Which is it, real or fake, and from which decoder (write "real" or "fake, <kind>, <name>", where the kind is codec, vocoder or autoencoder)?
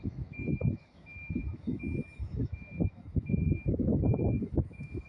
fake, autoencoder, DAC-VAE